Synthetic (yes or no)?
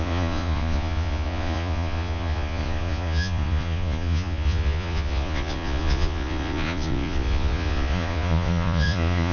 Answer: yes